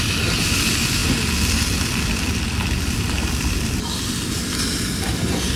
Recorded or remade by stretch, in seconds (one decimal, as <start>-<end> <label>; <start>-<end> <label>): 0.0-5.6 recorded